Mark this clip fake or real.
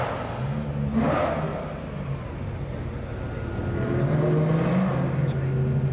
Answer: real